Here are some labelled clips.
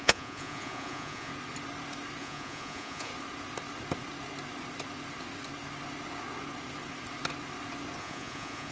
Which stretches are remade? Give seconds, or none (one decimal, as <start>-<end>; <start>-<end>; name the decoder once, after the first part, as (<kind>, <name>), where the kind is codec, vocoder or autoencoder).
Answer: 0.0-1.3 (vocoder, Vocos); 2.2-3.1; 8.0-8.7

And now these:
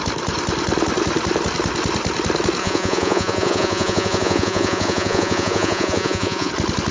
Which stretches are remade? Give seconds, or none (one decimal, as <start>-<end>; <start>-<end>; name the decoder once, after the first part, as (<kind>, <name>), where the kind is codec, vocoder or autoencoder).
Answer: 2.6-6.5 (vocoder, Vocos)

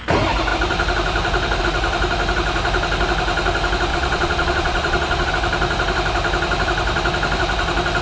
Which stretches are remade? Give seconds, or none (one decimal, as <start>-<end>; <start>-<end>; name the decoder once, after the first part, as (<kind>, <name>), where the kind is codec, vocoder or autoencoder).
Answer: 3.9-5.3 (vocoder, Vocos)

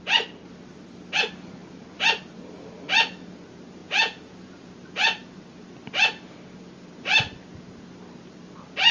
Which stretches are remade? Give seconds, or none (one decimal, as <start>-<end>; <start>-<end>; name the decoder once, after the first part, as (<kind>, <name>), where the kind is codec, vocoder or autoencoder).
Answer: 3.8-4.7 (vocoder, Vocos)

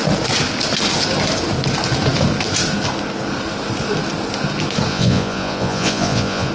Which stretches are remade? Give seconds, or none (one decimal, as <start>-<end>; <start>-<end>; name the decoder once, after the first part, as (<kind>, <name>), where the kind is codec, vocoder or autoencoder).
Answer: 4.9-6.5 (vocoder, Vocos)